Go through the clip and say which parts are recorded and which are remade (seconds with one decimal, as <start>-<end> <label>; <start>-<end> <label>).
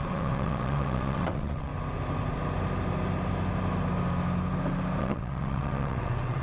0.0-1.7 remade; 1.7-5.0 recorded; 5.0-6.4 remade